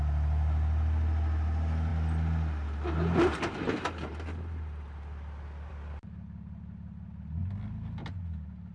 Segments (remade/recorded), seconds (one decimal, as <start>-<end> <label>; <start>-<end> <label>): 0.0-8.7 recorded